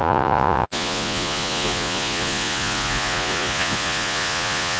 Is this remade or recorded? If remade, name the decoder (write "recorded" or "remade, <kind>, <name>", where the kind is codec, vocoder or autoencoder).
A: remade, vocoder, Vocos